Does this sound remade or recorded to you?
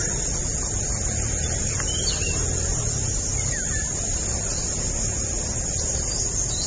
recorded